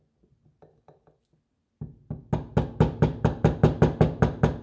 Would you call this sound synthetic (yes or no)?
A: no